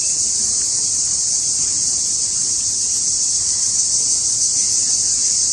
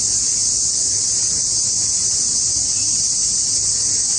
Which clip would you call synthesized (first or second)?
first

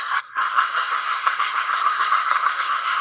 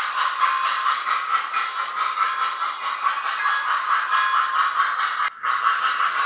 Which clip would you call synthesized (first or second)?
first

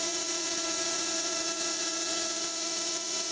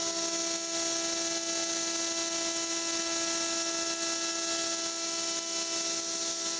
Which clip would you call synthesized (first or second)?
first